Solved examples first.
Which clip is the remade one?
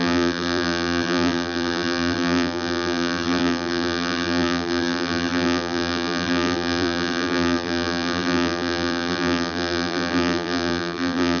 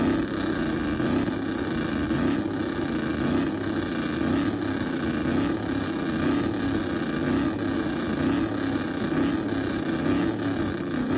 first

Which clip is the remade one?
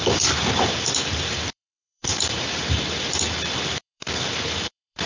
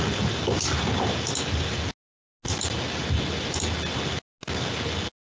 first